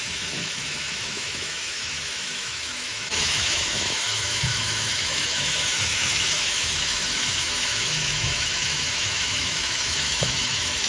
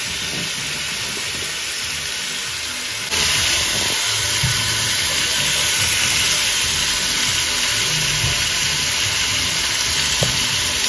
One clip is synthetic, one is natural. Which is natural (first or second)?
second